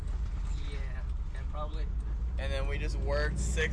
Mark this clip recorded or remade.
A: recorded